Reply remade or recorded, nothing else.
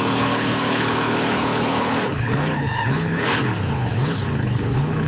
remade